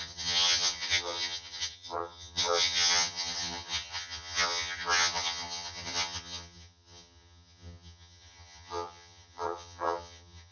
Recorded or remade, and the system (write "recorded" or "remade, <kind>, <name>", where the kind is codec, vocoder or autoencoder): remade, vocoder, HiFi-GAN